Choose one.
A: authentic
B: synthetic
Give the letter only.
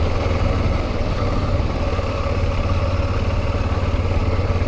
A